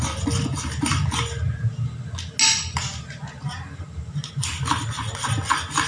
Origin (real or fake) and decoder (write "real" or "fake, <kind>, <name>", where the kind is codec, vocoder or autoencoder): real